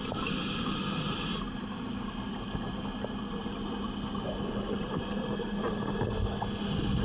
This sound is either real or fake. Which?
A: real